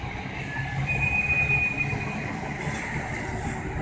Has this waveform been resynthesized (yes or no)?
no